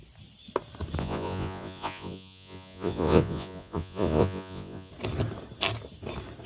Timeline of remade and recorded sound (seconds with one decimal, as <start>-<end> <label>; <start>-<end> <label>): 0.0-1.0 recorded; 1.0-4.9 remade; 4.9-6.5 recorded